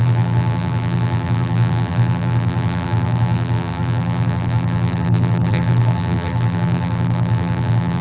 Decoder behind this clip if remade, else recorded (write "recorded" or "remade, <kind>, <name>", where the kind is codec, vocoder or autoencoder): remade, vocoder, BigVGAN v2